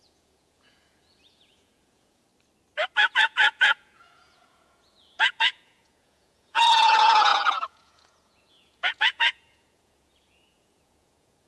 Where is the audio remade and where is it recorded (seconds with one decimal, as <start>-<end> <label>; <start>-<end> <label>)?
0.0-2.3 remade; 2.3-3.1 recorded; 3.1-11.5 remade